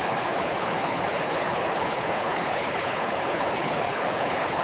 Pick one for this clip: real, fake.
fake